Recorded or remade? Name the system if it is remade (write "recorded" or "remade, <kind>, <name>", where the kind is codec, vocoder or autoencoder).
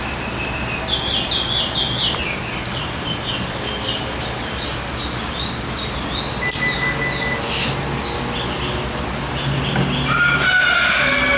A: recorded